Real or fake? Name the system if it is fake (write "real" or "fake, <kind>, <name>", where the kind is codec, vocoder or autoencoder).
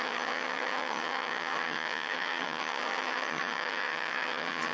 fake, vocoder, HiFi-GAN